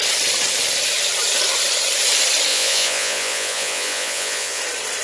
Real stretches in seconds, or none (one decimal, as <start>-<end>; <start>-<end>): 0.0-2.5; 4.6-5.0